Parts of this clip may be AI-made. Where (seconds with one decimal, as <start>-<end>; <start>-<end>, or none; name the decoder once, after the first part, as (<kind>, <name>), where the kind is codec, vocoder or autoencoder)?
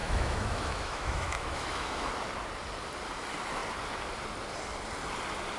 0.0-2.1 (autoencoder, DAC-VAE)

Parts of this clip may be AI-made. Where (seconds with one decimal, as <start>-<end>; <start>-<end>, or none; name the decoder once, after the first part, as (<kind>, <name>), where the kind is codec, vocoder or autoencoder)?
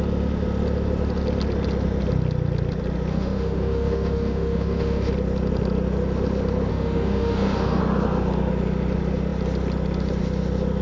3.1-5.1 (autoencoder, DAC-VAE); 6.7-7.8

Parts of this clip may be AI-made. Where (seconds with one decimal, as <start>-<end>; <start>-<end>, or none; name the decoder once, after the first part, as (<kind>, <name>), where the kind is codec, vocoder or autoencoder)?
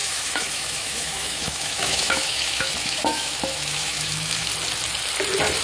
0.0-4.5 (autoencoder, DAC-VAE)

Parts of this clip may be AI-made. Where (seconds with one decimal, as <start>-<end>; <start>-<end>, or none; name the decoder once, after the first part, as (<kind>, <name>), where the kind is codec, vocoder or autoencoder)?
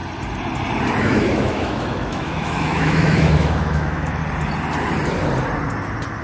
1.0-4.2 (autoencoder, DAC-VAE)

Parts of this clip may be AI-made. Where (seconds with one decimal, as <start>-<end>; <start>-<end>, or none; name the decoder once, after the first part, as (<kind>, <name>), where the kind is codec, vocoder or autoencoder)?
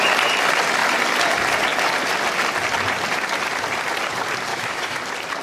4.5-5.0 (autoencoder, DAC-VAE)